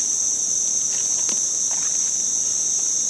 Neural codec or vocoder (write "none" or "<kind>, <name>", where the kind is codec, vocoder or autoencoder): none